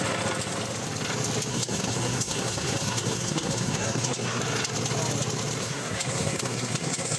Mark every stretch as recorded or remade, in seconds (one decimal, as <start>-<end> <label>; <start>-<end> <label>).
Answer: 0.0-1.5 recorded; 1.5-4.4 remade; 4.4-5.6 recorded; 5.6-7.2 remade